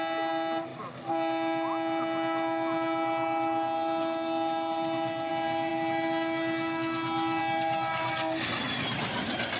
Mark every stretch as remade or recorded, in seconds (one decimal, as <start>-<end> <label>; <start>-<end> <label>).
0.0-9.6 recorded